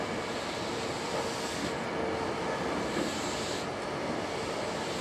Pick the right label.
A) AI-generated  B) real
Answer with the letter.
B